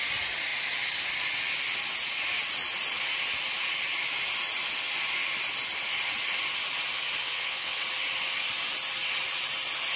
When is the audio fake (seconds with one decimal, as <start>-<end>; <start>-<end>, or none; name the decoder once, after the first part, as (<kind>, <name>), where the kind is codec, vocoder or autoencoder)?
7.2-7.8 (vocoder, WaveNeXt)